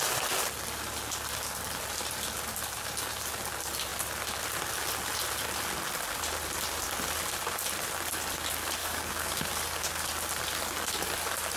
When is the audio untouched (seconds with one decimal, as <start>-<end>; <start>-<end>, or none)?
0.0-8.8; 9.4-11.6